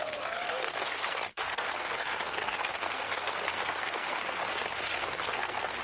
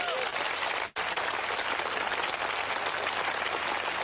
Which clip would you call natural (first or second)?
second